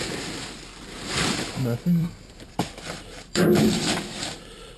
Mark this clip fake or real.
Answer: fake